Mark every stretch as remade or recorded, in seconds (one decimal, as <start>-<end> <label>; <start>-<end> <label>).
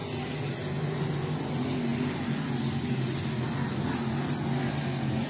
0.0-5.3 recorded